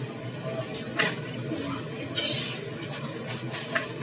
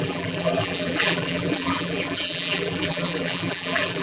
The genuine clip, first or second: first